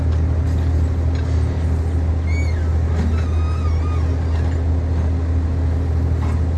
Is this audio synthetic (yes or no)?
no